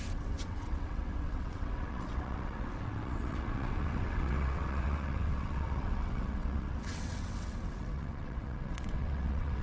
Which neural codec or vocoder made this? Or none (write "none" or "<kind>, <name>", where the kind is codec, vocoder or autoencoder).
vocoder, WaveNeXt